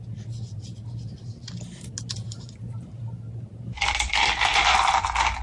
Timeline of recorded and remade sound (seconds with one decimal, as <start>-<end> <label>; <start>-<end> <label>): 0.0-5.4 recorded